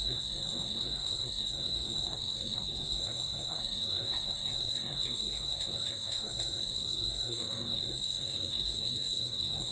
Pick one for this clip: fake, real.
fake